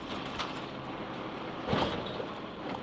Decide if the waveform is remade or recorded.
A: recorded